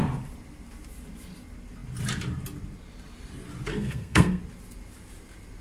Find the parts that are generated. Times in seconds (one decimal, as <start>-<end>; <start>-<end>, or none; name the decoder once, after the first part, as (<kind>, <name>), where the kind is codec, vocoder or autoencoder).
3.7-4.4 (codec, SNAC)